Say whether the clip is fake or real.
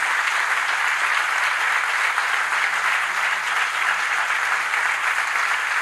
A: real